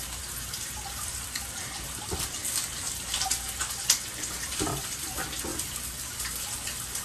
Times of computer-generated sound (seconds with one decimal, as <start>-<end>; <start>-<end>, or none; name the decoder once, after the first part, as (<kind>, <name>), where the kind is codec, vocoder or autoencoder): none